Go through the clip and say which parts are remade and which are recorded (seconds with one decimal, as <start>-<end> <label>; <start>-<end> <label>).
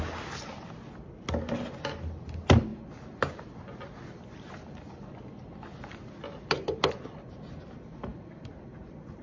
0.0-8.1 recorded; 8.1-9.2 remade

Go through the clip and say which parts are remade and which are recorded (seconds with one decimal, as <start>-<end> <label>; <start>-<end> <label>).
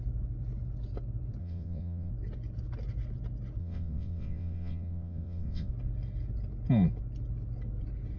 0.0-1.4 recorded; 1.4-2.1 remade; 2.1-3.6 recorded; 3.6-5.7 remade; 5.7-8.2 recorded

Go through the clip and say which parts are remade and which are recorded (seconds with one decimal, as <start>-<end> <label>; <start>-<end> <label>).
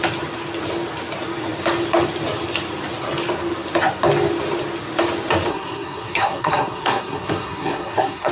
0.0-5.5 recorded; 5.5-8.3 remade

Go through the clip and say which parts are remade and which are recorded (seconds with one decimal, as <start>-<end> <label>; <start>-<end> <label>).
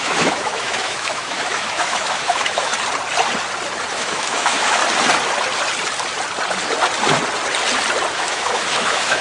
0.0-2.7 remade; 2.7-3.9 recorded; 3.9-4.8 remade; 4.8-8.2 recorded; 8.2-9.2 remade